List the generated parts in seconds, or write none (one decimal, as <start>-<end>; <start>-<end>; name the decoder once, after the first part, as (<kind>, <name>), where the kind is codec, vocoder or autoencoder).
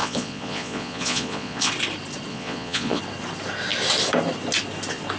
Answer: 0.0-1.7 (vocoder, Vocos); 2.3-3.0